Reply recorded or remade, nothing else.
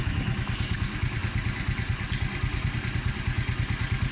recorded